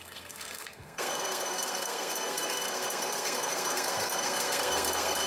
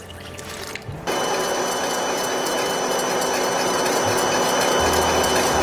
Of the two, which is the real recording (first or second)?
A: second